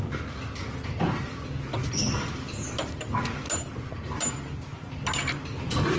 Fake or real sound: real